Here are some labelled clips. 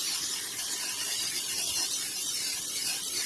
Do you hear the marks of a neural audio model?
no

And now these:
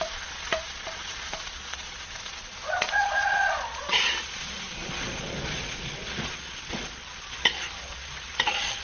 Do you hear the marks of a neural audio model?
yes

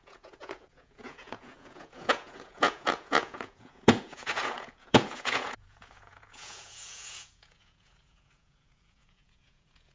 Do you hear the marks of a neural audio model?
yes